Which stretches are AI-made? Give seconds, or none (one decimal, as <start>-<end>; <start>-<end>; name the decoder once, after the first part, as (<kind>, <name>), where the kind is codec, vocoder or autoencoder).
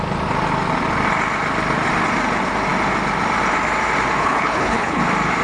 4.2-5.0 (codec, HILCodec)